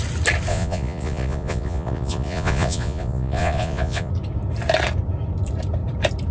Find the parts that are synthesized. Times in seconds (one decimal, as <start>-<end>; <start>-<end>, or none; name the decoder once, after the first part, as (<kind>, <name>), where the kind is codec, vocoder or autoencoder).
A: 0.5-4.1 (vocoder, Vocos)